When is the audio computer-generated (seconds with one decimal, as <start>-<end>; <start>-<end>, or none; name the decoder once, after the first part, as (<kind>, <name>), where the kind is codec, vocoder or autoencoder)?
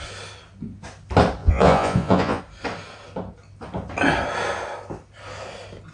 1.4-2.4 (vocoder, Vocos)